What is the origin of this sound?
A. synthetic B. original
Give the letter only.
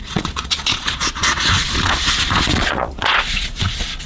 A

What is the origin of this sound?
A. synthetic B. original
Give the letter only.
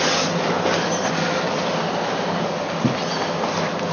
B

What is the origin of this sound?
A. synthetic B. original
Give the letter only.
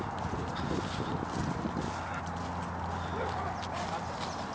B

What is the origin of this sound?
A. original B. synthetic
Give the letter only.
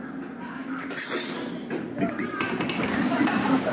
A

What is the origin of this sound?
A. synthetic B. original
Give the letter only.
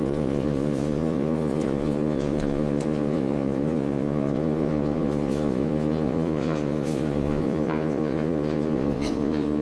A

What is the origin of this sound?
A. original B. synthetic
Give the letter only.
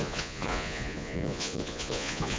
B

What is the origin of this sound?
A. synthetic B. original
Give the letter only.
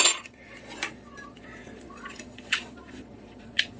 A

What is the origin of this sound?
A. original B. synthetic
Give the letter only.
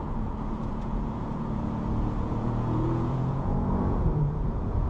B